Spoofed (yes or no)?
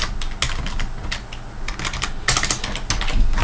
no